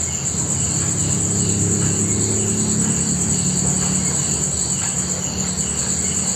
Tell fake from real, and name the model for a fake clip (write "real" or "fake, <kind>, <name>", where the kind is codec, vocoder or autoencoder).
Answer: real